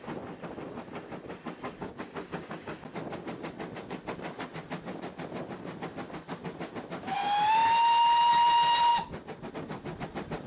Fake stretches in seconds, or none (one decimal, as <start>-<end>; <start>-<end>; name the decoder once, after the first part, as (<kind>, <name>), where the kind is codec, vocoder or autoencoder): 1.8-2.8 (codec, DAC)